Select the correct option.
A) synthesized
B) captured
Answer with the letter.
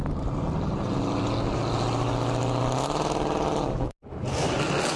B